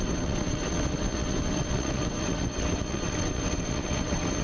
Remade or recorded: remade